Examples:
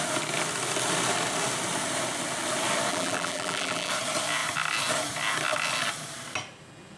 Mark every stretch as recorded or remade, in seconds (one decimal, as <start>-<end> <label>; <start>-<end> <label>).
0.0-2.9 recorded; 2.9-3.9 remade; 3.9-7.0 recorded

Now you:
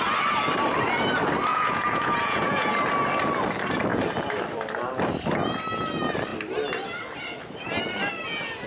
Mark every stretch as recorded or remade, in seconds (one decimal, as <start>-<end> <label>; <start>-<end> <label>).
0.0-1.5 recorded; 1.5-2.7 remade; 2.7-8.7 recorded

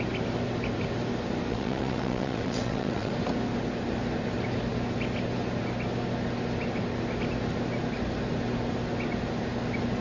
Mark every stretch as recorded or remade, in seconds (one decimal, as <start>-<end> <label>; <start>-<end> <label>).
0.0-1.5 recorded; 1.5-3.1 remade; 3.1-10.0 recorded

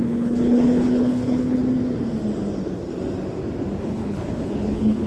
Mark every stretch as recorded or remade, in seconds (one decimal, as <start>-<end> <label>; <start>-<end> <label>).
0.0-1.6 remade; 1.6-3.8 recorded; 3.8-5.1 remade